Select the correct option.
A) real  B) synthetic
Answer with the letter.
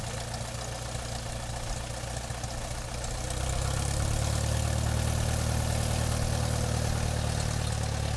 A